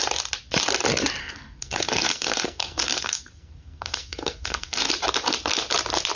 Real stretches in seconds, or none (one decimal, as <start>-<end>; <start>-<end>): 0.0-1.2; 4.9-6.2